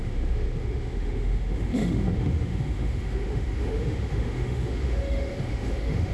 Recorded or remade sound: remade